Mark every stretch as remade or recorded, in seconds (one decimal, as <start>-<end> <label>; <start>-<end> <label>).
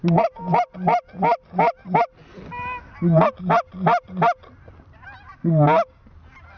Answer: 0.0-6.6 recorded